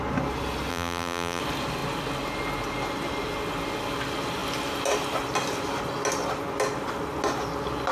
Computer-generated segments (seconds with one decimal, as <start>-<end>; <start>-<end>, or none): 0.7-1.4

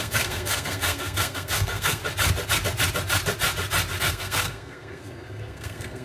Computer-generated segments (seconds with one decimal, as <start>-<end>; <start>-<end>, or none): 0.0-2.0; 4.0-6.0